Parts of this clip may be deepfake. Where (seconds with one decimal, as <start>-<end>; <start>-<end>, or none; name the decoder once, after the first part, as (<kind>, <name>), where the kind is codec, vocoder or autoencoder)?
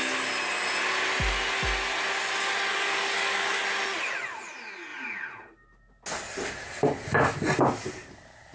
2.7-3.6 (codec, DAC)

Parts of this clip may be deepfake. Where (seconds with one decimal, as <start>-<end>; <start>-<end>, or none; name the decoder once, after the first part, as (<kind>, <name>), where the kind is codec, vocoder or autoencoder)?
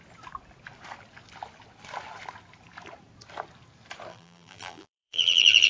4.1-5.7 (vocoder, BigVGAN v2)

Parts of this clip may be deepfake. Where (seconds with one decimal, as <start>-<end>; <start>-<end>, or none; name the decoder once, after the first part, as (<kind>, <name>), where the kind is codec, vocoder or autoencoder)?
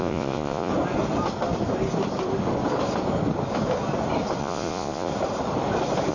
0.0-0.7 (vocoder, Vocos); 4.4-5.1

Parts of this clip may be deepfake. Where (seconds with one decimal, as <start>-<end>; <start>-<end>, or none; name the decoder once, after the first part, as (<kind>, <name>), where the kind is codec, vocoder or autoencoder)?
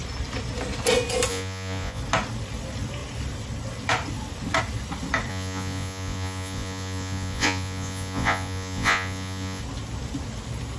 1.3-2.0 (vocoder, Vocos); 5.3-9.6